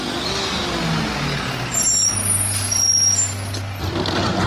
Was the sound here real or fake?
real